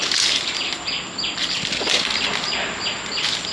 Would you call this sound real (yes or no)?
yes